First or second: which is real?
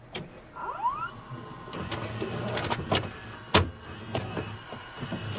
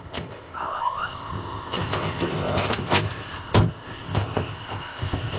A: first